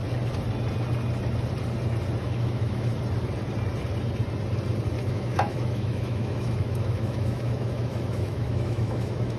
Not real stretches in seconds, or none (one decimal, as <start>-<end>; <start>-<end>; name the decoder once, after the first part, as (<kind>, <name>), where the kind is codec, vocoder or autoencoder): 2.2-2.9 (autoencoder, DAC-VAE); 5.1-9.4